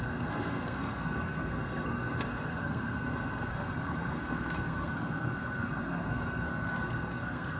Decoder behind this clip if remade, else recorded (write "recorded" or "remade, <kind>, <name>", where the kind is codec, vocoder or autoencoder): remade, codec, SNAC